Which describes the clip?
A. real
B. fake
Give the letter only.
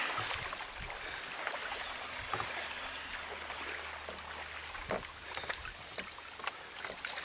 A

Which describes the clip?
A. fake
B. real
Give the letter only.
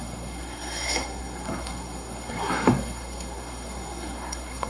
A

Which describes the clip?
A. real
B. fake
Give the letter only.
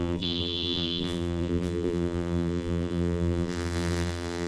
B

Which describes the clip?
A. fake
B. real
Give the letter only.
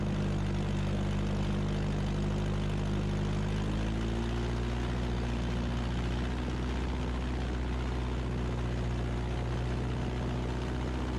B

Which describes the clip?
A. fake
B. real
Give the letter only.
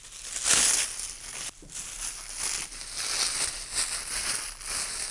B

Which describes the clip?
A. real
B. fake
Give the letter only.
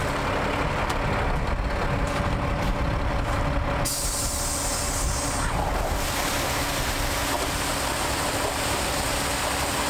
A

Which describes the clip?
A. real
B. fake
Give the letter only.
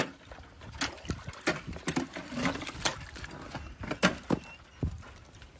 A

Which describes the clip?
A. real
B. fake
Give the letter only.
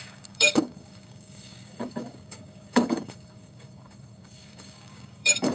B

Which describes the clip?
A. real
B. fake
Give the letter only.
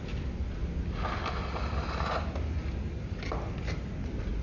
A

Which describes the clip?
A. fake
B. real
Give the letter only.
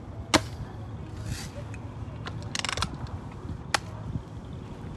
B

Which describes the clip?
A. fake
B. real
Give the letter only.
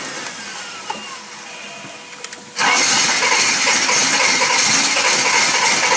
B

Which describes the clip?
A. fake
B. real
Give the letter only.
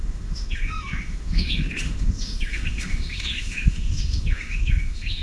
A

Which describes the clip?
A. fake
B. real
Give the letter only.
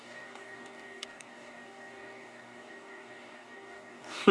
A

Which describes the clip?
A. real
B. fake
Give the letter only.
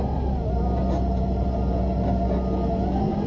A